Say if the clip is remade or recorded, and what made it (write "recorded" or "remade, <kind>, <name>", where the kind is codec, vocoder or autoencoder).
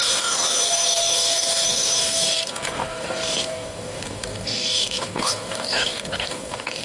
remade, codec, DAC